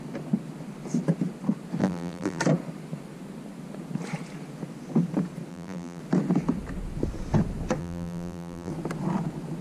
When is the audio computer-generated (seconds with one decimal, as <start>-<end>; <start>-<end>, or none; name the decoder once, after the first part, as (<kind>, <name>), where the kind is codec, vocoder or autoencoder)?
1.8-2.4 (vocoder, BigVGAN v2); 5.5-6.0; 7.8-8.7